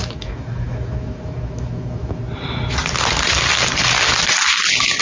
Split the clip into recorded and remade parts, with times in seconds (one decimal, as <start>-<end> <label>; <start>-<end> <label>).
0.0-2.2 remade; 2.2-5.0 recorded